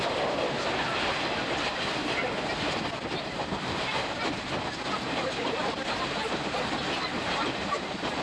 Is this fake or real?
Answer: real